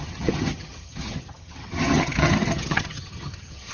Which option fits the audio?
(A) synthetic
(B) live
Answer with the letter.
A